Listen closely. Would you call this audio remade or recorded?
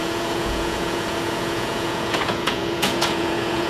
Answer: remade